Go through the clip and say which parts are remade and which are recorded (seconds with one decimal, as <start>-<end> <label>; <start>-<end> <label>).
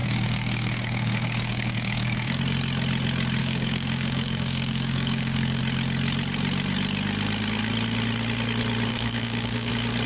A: 0.0-2.4 remade; 2.4-3.4 recorded; 3.4-5.6 remade; 5.6-8.9 recorded; 8.9-9.7 remade; 9.7-10.1 recorded